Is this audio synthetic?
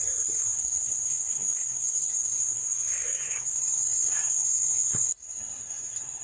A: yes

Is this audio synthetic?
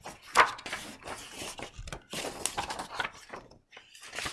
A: no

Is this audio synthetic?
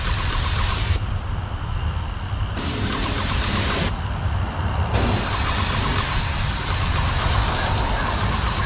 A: no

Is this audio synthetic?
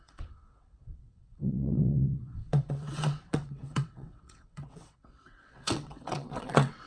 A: yes